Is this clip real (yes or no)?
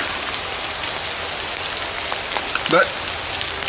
yes